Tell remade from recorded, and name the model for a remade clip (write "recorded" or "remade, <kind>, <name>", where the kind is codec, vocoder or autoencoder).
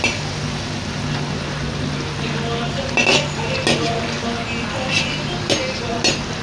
recorded